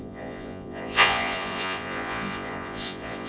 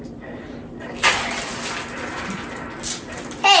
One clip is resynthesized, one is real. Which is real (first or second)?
second